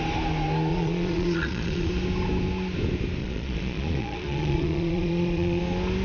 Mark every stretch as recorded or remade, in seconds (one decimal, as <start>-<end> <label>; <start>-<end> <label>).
0.0-0.7 recorded; 0.7-1.9 remade; 1.9-3.2 recorded; 3.2-5.6 remade; 5.6-6.0 recorded